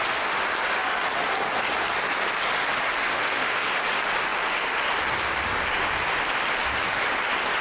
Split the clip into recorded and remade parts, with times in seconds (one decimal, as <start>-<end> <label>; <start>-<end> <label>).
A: 0.0-3.1 recorded; 3.1-3.7 remade; 3.7-7.6 recorded